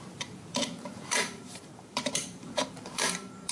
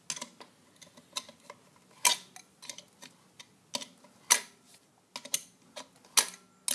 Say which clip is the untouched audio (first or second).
second